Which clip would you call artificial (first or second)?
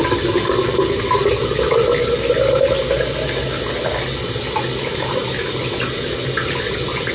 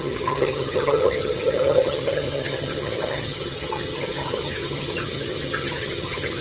second